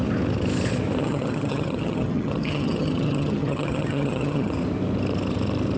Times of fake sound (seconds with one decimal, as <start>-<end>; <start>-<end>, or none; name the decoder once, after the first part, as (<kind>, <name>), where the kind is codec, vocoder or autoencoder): 1.0-4.5 (vocoder, HiFi-GAN)